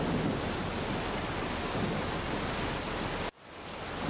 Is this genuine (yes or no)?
yes